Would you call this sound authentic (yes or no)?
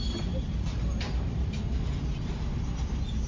yes